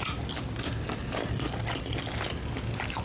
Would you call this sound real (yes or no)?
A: yes